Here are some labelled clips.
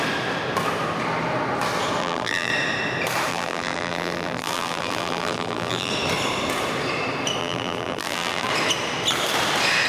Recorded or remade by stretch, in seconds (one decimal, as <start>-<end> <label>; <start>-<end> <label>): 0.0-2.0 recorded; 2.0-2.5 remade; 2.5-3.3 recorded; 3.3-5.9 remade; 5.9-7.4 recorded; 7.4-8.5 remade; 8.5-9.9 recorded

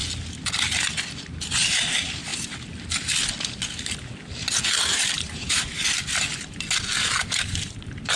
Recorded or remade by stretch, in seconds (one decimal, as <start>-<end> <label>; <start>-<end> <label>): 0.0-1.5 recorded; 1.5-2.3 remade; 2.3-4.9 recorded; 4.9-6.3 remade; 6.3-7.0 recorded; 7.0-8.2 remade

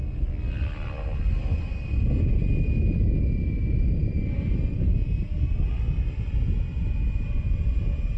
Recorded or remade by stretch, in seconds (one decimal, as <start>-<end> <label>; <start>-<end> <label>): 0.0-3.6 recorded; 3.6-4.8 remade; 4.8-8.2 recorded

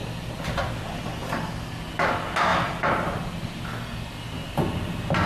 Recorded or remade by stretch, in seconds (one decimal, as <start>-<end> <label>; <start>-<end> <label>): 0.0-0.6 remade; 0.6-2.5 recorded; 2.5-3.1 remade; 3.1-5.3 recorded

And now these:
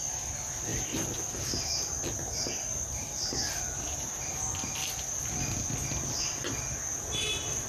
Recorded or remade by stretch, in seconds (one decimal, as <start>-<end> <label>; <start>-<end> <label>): 0.0-7.7 recorded

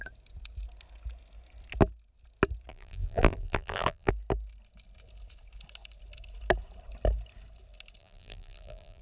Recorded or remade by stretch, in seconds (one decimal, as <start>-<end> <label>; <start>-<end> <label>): 0.0-2.7 recorded; 2.7-4.1 remade; 4.1-8.0 recorded; 8.0-9.0 remade